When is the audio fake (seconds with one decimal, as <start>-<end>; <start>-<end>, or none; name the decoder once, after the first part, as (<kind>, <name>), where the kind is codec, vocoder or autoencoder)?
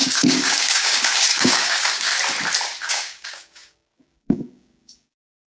0.0-2.1 (codec, DAC); 2.8-5.5